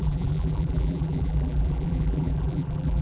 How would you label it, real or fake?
fake